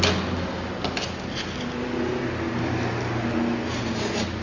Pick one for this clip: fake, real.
real